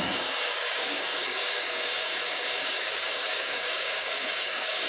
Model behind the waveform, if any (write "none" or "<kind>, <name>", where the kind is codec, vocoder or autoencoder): codec, DAC